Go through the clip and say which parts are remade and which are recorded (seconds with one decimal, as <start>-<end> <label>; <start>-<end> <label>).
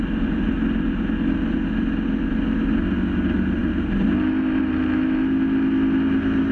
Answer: 0.0-6.5 recorded